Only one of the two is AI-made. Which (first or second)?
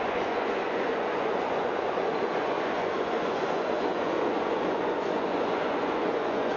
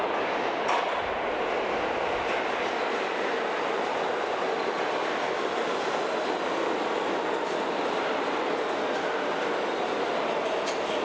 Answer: first